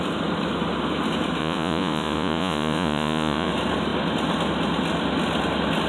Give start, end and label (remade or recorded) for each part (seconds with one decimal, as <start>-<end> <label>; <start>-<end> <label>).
0.0-1.4 recorded; 1.4-3.5 remade; 3.5-5.9 recorded